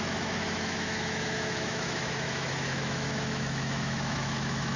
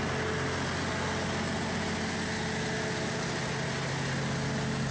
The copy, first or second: first